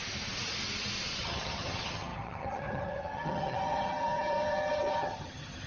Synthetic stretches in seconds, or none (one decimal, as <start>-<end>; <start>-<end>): 1.2-5.7